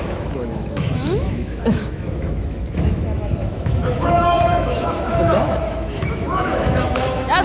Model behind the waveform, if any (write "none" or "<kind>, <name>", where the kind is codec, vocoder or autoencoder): autoencoder, DAC-VAE